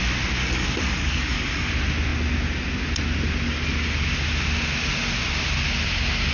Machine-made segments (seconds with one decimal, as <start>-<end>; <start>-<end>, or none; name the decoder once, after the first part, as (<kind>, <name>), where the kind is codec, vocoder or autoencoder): 0.4-1.7 (codec, DAC)

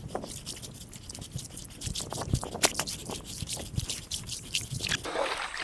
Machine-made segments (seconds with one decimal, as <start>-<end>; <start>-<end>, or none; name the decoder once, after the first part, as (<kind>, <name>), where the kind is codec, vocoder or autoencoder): 3.0-4.9 (vocoder, BigVGAN v2)

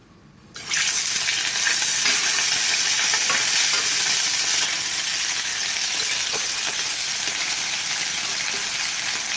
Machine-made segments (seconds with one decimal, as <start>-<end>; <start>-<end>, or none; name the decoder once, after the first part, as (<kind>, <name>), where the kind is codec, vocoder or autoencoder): 5.5-7.9 (vocoder, BigVGAN v2)